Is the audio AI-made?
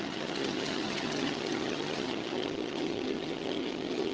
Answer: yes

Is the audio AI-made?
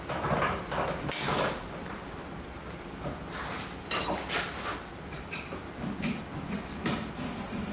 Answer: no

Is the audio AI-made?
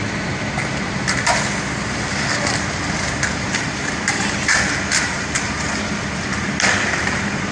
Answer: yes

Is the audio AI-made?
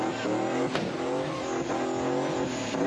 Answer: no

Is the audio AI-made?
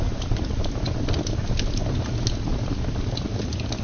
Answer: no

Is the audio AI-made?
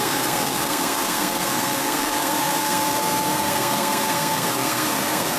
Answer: yes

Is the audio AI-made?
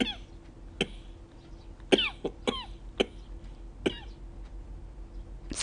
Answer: no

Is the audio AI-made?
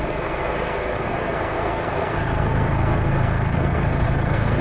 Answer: yes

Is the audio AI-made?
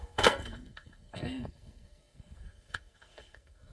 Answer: yes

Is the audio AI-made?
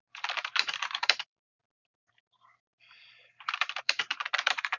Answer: yes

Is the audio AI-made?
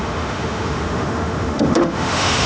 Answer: yes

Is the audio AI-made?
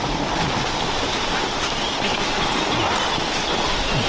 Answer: no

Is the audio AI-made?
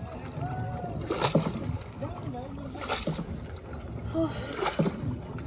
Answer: no